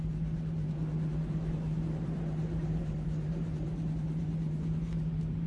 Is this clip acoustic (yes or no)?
no